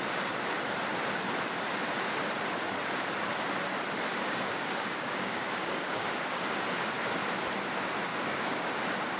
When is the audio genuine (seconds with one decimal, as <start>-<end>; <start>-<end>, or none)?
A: 0.0-4.1; 6.5-8.1; 8.7-9.2